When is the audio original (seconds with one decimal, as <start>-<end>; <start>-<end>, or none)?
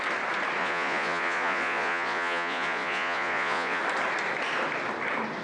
0.0-0.6; 3.8-5.4